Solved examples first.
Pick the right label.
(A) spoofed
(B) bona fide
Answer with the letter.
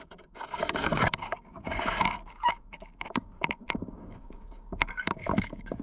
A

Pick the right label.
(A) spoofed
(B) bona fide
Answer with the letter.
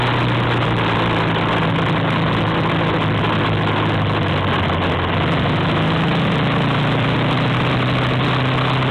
B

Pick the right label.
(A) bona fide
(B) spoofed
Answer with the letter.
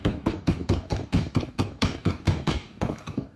B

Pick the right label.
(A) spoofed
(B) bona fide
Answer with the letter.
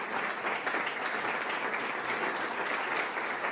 B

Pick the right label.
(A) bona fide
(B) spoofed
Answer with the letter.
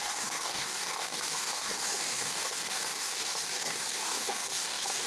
B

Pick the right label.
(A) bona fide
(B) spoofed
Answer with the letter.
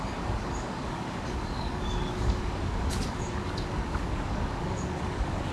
B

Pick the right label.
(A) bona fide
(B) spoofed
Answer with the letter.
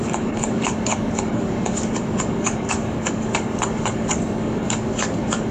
B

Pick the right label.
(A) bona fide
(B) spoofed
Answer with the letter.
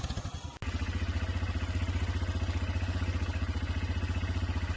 A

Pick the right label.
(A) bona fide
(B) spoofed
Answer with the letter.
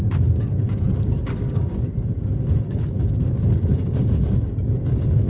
B